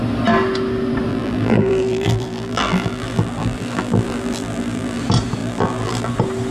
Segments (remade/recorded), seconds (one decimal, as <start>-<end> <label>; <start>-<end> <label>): 0.0-1.1 recorded; 1.1-5.0 remade; 5.0-5.4 recorded; 5.4-6.1 remade; 6.1-6.5 recorded